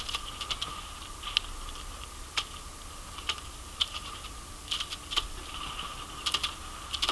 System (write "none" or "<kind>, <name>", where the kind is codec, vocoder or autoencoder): none